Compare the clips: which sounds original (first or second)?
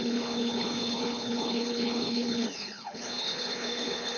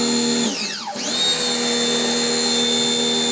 second